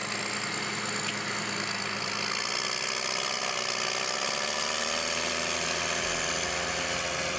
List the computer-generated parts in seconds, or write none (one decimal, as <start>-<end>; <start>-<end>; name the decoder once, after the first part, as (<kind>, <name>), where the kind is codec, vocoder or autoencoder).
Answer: none